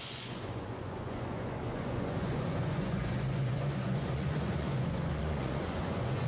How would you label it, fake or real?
fake